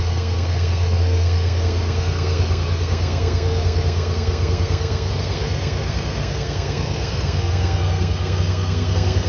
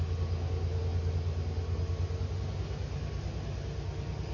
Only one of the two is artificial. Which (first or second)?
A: first